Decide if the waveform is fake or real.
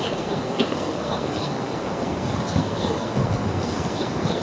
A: fake